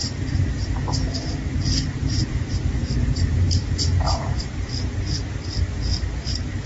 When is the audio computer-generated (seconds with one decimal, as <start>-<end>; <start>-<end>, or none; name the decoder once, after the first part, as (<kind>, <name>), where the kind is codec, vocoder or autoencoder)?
0.0-0.9 (vocoder, BigVGAN v2); 2.0-4.4